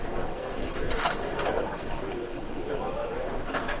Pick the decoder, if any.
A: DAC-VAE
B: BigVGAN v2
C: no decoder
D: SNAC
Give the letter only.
D